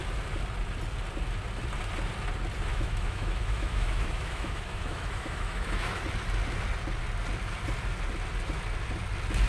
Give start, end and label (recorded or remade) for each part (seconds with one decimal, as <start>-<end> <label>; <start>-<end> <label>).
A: 0.0-2.7 recorded; 2.7-6.0 remade; 6.0-9.5 recorded